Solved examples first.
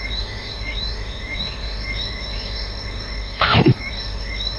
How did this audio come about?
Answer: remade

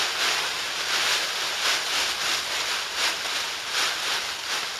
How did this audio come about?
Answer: recorded